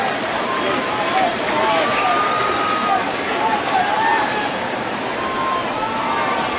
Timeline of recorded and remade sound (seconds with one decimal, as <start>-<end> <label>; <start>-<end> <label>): 0.0-6.6 recorded